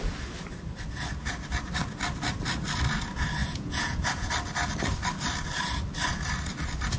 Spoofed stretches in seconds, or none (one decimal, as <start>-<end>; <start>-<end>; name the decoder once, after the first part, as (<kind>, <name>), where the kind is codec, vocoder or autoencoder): 3.4-4.3 (vocoder, Vocos)